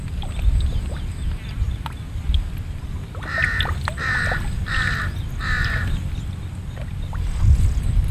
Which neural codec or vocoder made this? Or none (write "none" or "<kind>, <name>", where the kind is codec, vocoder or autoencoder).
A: none